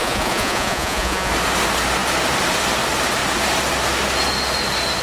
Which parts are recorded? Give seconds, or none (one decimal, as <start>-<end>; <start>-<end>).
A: 1.3-5.0